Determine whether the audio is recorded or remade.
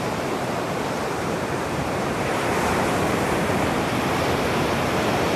remade